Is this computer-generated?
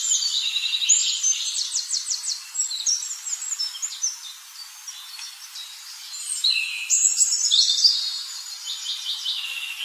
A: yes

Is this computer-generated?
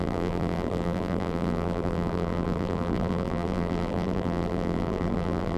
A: yes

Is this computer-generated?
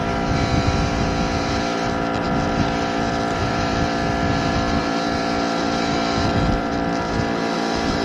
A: yes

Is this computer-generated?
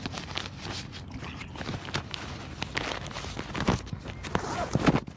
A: no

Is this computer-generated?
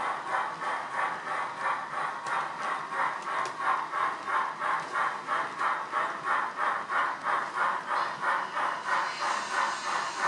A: no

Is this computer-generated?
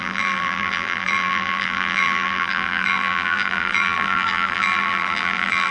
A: yes